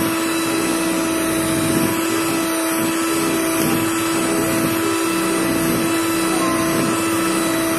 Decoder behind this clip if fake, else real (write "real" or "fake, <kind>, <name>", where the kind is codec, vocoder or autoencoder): real